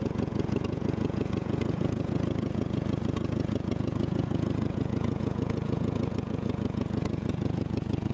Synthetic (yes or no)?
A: yes